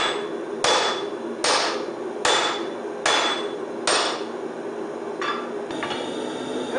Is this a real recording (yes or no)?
yes